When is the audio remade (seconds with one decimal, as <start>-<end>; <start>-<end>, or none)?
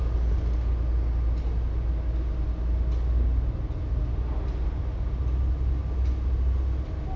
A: 3.3-4.0